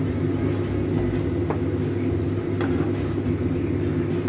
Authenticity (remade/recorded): recorded